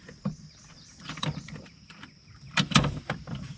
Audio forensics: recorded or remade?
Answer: remade